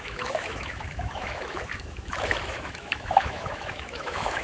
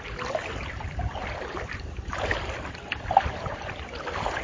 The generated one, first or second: first